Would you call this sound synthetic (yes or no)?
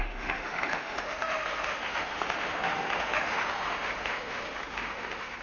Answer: yes